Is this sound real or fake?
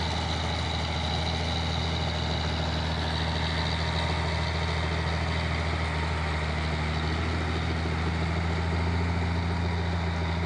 real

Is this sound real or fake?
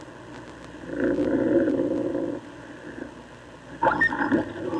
real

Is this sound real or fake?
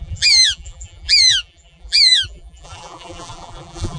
fake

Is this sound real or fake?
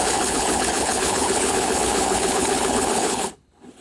fake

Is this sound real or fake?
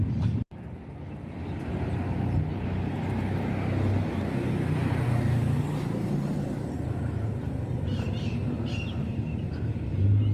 real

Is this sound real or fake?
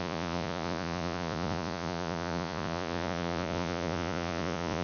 fake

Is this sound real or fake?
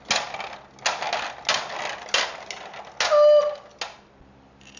real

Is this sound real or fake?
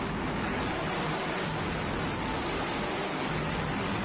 real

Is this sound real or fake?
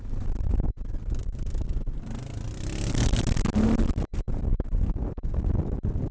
real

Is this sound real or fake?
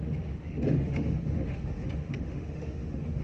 fake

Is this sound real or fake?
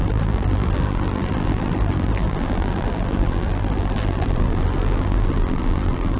fake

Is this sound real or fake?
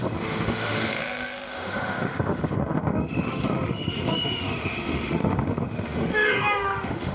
fake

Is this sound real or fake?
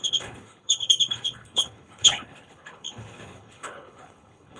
fake